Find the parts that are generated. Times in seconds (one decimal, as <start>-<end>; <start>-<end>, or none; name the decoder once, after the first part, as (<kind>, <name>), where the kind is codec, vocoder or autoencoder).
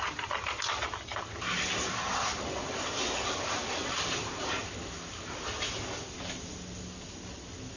3.6-4.6 (vocoder, BigVGAN v2)